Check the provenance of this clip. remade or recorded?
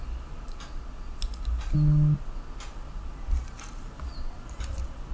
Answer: recorded